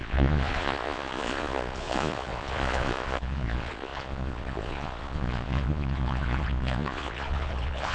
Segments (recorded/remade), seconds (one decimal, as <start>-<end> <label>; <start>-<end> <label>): 0.0-7.9 remade